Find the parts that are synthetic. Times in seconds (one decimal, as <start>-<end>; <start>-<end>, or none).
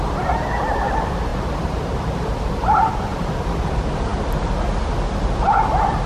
1.3-2.2; 3.1-3.6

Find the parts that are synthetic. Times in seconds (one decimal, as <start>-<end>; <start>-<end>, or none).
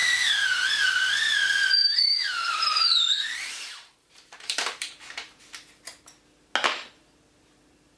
0.0-0.9; 1.8-5.4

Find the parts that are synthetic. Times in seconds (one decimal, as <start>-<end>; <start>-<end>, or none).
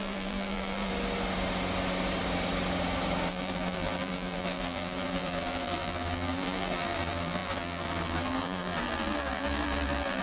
0.0-0.9; 3.3-10.2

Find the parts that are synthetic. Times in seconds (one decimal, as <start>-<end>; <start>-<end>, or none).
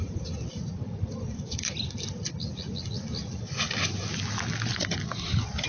0.5-1.7; 3.2-4.1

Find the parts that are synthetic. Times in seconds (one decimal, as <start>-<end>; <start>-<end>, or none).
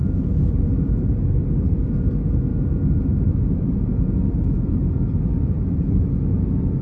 0.0-2.1; 2.5-6.0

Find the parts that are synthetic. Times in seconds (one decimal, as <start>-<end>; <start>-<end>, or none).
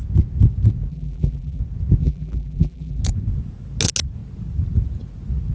0.9-1.6; 2.0-3.0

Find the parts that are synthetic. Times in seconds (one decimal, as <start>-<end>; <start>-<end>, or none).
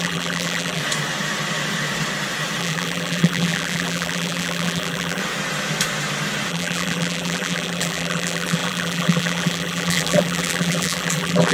0.0-0.8; 2.6-5.2; 6.5-11.5